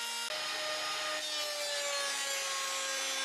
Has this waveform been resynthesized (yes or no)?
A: no